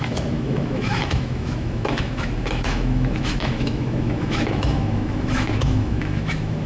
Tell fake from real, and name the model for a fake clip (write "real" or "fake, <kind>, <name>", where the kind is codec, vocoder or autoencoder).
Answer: fake, autoencoder, DAC-VAE